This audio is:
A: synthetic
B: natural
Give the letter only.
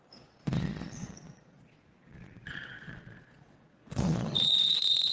A